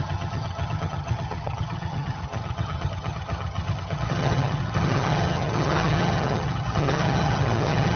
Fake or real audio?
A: fake